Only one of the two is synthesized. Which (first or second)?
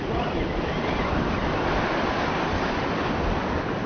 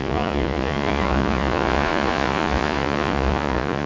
second